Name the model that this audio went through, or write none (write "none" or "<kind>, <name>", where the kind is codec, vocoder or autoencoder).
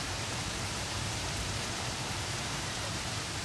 vocoder, BigVGAN v2